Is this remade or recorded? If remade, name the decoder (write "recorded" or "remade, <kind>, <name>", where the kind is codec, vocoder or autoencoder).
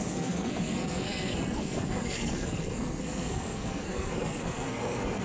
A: remade, codec, SNAC